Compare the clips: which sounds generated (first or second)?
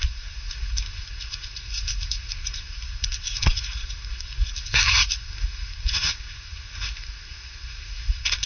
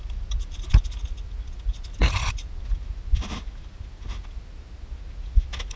first